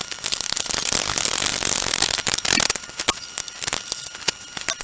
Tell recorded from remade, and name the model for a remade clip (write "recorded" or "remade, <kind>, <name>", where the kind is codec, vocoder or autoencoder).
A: remade, vocoder, BigVGAN v2